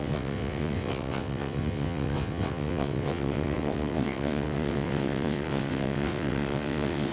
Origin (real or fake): fake